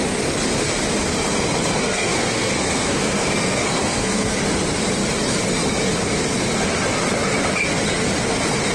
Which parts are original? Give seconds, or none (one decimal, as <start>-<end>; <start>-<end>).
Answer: 0.0-1.8; 4.4-8.7